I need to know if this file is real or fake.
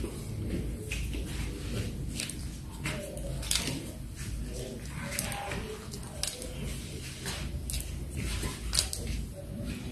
real